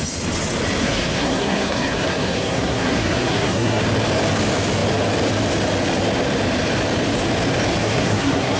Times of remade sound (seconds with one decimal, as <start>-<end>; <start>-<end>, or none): 0.8-3.8; 7.8-8.6